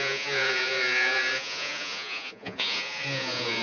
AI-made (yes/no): yes